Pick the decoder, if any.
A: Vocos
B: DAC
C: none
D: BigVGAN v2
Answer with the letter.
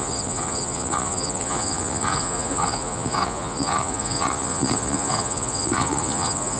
A